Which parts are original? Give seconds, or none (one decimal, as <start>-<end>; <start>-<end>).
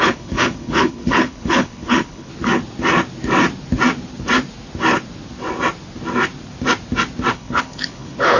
2.3-7.3